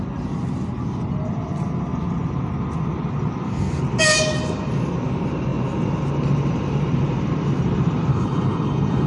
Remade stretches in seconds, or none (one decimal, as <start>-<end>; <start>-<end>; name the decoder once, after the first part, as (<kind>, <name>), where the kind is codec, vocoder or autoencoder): 8.1-9.1 (codec, HILCodec)